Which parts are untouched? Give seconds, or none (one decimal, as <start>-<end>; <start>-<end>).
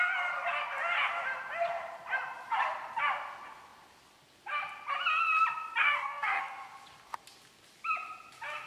0.0-5.8; 6.4-8.7